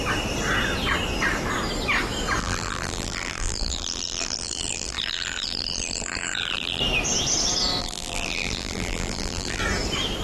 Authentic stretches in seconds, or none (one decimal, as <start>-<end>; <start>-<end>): 0.0-2.4; 6.8-7.8; 9.6-10.2